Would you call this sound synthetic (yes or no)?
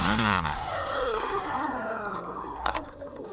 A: yes